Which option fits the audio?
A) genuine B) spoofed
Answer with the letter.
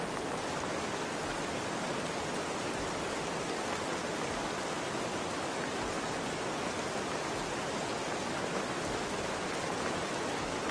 A